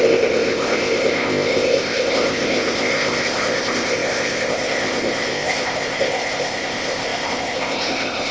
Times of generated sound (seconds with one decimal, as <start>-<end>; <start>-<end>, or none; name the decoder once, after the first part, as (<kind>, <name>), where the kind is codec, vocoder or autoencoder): 0.0-8.3 (codec, ZipCodec)